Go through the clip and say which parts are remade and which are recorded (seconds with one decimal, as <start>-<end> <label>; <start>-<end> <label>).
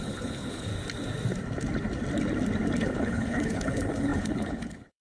0.0-0.7 remade; 0.7-2.8 recorded; 2.8-5.0 remade